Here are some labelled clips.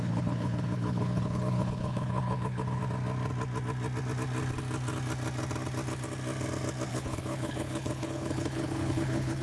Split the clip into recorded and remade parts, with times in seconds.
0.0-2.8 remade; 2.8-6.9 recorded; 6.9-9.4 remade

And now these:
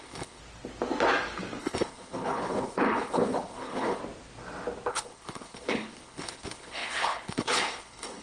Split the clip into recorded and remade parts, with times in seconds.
0.0-0.4 remade; 0.4-1.6 recorded; 1.6-4.0 remade; 4.0-4.9 recorded; 4.9-8.2 remade